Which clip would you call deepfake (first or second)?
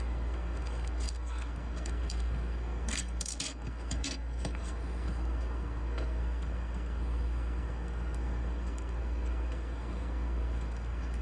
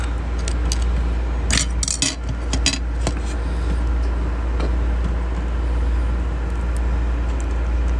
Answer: first